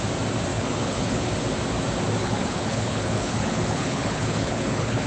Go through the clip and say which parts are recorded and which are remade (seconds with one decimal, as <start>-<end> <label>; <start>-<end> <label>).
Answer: 0.0-0.5 recorded; 0.5-1.3 remade; 1.3-2.2 recorded; 2.2-5.1 remade